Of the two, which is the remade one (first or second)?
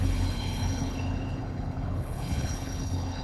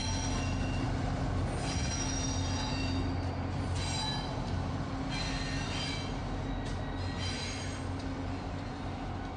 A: first